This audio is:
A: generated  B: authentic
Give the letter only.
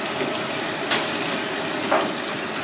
B